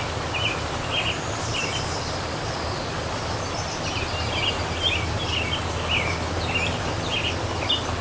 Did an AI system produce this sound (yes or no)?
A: no